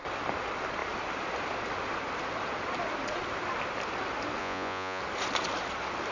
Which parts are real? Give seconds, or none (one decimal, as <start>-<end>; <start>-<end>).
0.0-4.4; 5.0-6.1